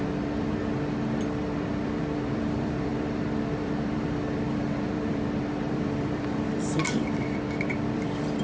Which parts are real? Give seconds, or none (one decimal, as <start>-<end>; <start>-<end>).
0.6-1.4

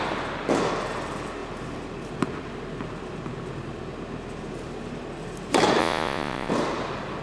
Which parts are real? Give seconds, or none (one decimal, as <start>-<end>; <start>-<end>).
0.0-5.8; 6.5-7.2

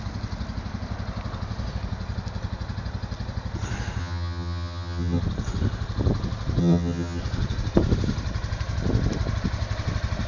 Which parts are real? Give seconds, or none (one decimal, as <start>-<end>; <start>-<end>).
0.0-4.0; 5.2-6.6; 7.2-10.3